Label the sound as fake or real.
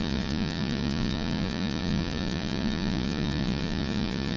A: fake